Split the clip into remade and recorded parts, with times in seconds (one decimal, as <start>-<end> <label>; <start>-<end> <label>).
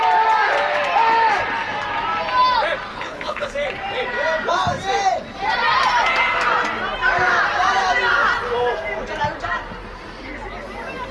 0.0-2.9 recorded; 2.9-3.5 remade; 3.5-11.1 recorded